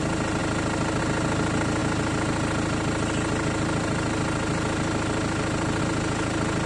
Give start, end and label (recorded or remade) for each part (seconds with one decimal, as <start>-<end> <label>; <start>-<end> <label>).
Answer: 0.0-6.7 recorded